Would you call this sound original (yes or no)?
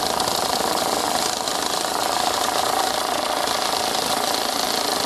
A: yes